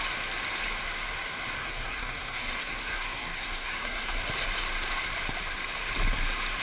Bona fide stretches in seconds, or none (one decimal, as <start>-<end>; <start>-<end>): 0.0-1.6; 4.2-6.6